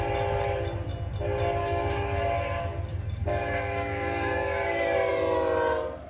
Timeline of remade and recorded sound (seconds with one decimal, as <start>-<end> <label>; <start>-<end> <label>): 0.0-1.6 recorded; 1.6-2.2 remade; 2.2-2.9 recorded; 2.9-5.1 remade; 5.1-6.1 recorded